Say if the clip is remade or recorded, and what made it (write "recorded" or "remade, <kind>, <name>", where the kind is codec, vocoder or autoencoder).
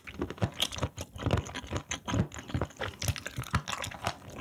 recorded